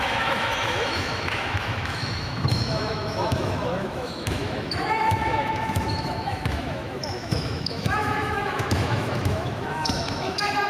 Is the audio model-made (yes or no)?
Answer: yes